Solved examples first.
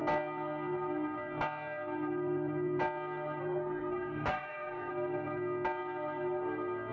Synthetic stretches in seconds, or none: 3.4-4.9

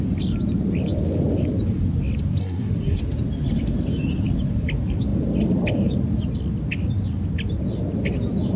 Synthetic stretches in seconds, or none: 2.4-3.0

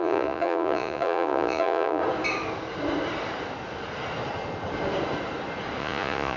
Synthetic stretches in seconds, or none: 0.0-2.0; 5.8-6.4

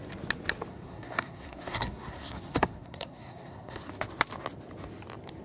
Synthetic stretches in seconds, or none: 0.7-3.9

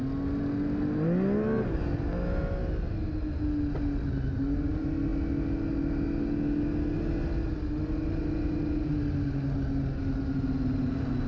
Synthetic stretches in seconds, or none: none

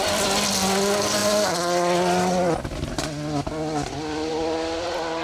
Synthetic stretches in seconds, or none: none

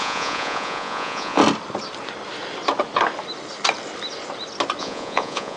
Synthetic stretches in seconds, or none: 0.0-1.4; 4.8-5.6

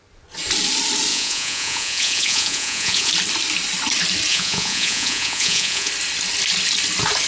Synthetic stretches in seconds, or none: 1.1-3.1; 4.3-5.9